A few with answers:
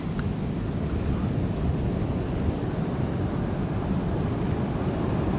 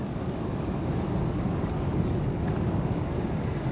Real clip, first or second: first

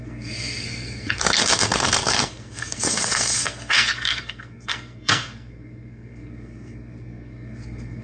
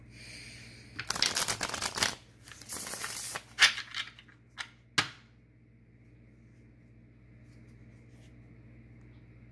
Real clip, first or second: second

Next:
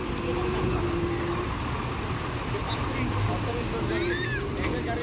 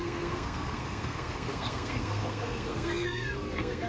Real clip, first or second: first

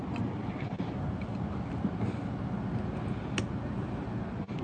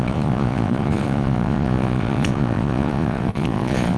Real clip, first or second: first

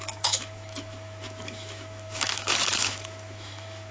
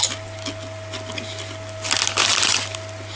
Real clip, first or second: second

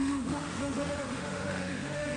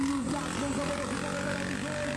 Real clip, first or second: second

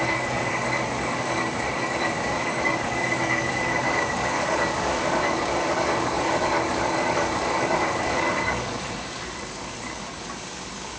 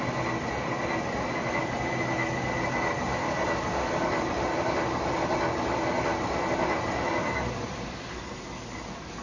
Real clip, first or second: second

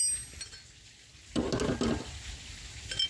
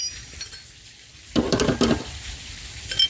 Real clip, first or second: first